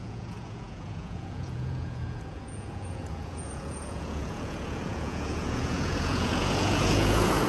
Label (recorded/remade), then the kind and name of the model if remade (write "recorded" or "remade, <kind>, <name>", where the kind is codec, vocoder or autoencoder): remade, vocoder, Vocos